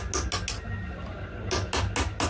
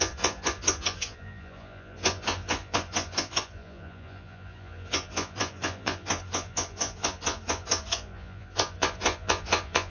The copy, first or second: second